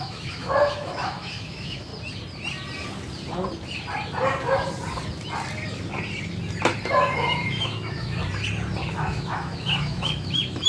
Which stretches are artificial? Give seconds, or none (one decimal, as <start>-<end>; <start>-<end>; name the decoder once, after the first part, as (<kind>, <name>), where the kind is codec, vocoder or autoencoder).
0.0-1.9 (autoencoder, DAC-VAE); 6.9-8.2; 8.9-10.7